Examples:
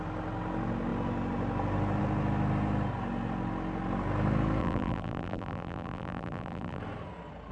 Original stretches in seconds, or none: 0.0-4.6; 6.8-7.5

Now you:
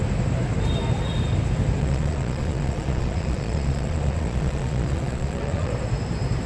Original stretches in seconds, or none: 0.0-1.8; 5.7-6.5

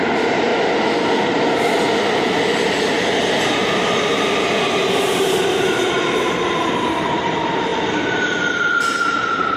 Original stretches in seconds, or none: 0.5-5.0; 7.7-8.6

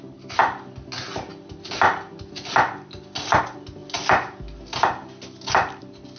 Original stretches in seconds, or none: 0.0-6.2

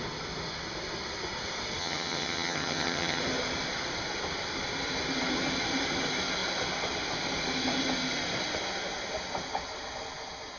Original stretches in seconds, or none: 0.0-1.8; 3.2-10.6